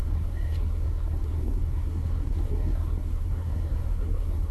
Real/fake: fake